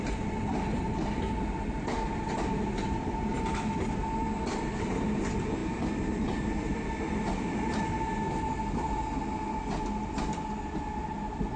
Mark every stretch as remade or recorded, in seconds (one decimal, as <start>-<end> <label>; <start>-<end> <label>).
0.0-5.6 recorded; 5.6-7.8 remade; 7.8-11.6 recorded